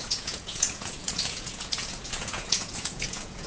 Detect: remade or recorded remade